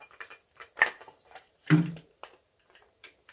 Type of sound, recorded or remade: remade